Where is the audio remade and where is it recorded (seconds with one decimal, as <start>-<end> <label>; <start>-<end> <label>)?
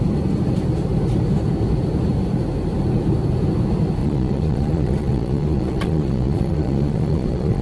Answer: 0.0-4.0 recorded; 4.0-7.6 remade